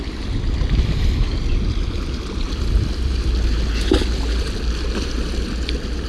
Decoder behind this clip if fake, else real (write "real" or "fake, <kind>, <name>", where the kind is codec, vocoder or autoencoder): real